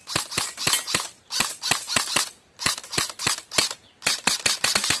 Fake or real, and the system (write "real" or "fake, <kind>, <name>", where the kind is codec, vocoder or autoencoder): real